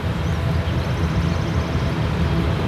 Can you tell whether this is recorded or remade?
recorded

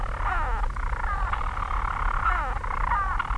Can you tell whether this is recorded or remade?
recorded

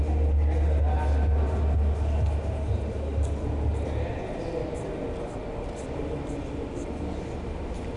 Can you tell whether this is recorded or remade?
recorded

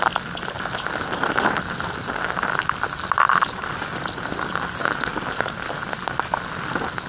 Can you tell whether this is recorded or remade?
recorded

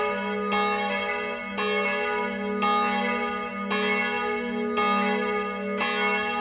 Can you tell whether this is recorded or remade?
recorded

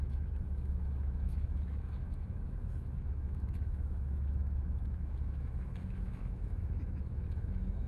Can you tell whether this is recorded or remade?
remade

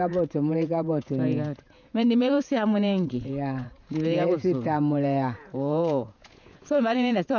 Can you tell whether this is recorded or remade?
remade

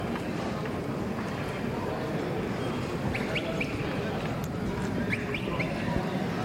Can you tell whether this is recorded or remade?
recorded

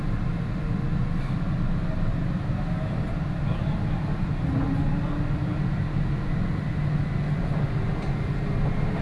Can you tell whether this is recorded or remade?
recorded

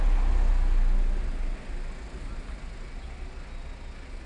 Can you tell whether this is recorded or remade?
recorded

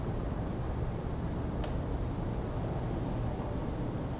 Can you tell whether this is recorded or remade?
recorded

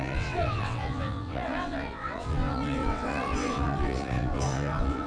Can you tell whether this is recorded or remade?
remade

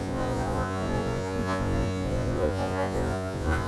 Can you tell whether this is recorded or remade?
remade